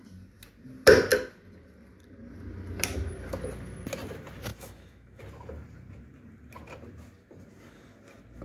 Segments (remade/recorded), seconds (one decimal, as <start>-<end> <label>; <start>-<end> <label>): 0.0-4.5 recorded; 4.5-5.2 remade; 5.2-8.4 recorded